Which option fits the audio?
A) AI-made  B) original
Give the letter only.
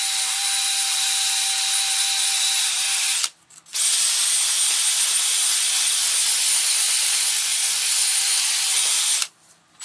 B